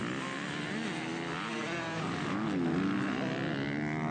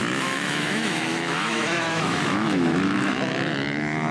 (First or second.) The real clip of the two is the first